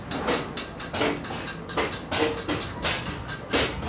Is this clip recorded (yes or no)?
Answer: yes